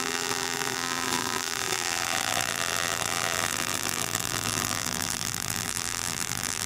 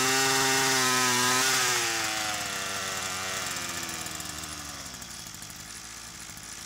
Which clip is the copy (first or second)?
first